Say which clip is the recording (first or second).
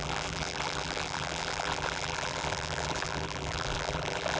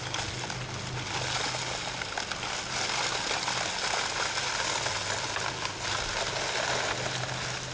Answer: second